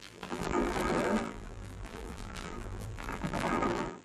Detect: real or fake fake